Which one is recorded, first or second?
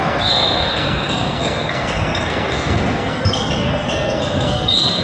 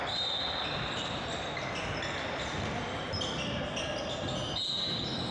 second